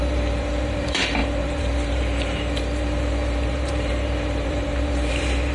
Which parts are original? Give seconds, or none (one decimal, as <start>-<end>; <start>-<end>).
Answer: none